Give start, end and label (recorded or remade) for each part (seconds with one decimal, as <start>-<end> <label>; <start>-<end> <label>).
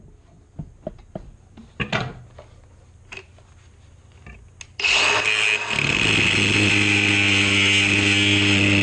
0.0-8.8 recorded